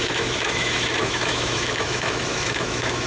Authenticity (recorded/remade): remade